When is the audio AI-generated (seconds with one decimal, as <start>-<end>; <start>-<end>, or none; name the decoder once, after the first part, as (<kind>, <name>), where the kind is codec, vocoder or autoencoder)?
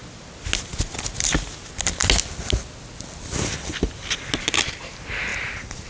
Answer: 5.3-5.9 (vocoder, BigVGAN v2)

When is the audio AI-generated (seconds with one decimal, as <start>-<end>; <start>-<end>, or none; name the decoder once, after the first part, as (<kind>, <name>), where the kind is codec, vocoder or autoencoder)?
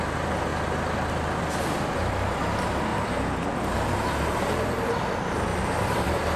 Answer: 2.9-4.9 (vocoder, BigVGAN v2); 5.5-6.4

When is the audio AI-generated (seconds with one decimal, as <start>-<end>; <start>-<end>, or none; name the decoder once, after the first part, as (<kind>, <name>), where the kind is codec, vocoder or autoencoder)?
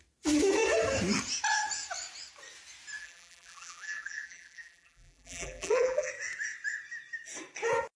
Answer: 3.0-6.1 (vocoder, BigVGAN v2)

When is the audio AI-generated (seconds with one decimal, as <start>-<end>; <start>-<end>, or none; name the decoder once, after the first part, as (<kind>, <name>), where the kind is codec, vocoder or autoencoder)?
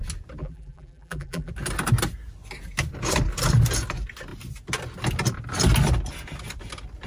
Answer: 0.4-1.5 (vocoder, BigVGAN v2)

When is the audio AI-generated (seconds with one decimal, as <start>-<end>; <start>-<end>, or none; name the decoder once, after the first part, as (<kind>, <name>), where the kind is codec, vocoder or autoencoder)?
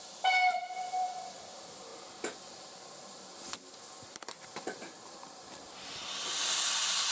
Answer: 0.0-1.9 (vocoder, BigVGAN v2); 3.8-6.0